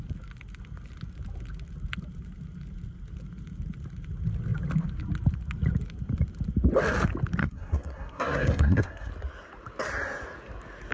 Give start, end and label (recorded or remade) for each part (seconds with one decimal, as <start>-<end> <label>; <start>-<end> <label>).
0.0-7.4 recorded; 7.4-9.1 remade; 9.1-10.9 recorded